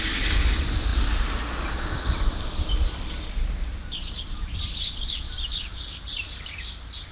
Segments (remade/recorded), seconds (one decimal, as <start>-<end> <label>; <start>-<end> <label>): 0.0-3.7 recorded; 3.7-6.5 remade; 6.5-7.1 recorded